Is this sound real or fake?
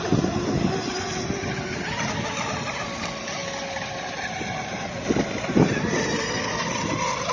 real